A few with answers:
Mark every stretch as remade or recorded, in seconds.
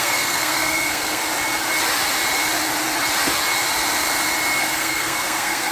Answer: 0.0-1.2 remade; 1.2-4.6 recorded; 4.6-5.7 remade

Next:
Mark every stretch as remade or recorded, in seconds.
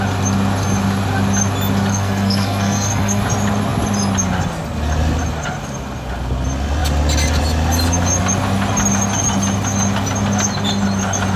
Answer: 0.0-1.9 recorded; 1.9-3.2 remade; 3.2-11.4 recorded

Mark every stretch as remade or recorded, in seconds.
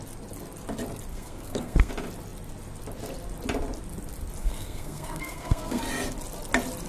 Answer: 0.0-1.1 recorded; 1.1-1.9 remade; 1.9-4.4 recorded; 4.4-5.8 remade; 5.8-6.9 recorded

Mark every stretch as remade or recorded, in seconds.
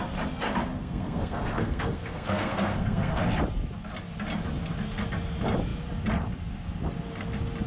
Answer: 0.0-0.7 recorded; 0.7-3.2 remade; 3.2-7.7 recorded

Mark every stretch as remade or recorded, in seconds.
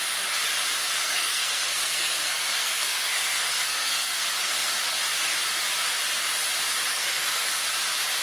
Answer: 0.0-0.8 recorded; 0.8-4.7 remade; 4.7-6.9 recorded; 6.9-7.5 remade; 7.5-8.2 recorded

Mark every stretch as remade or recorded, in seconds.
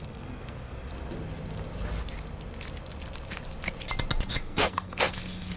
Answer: 0.0-0.9 remade; 0.9-4.3 recorded; 4.3-5.6 remade